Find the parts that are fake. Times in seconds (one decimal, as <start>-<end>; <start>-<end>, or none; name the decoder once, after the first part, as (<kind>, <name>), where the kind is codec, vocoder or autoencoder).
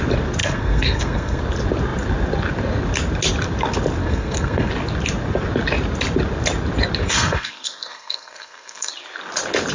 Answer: 0.4-1.4 (codec, SNAC); 4.0-4.7; 7.0-8.9